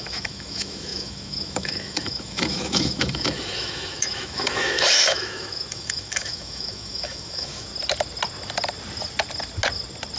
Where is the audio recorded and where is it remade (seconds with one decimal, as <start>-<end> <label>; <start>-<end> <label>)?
0.0-7.7 remade; 7.7-10.2 recorded